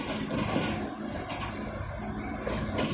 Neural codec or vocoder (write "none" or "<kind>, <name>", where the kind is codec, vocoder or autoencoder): none